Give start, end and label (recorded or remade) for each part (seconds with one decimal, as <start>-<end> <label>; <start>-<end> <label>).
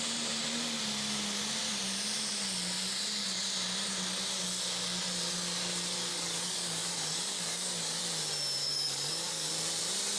0.0-6.1 recorded; 6.1-8.0 remade; 8.0-8.6 recorded; 8.6-9.5 remade; 9.5-10.2 recorded